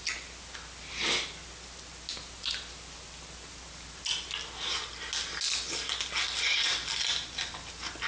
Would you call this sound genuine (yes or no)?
yes